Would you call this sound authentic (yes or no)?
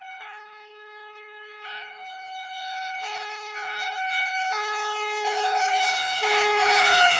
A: no